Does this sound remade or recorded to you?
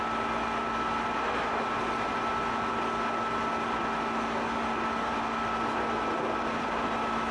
recorded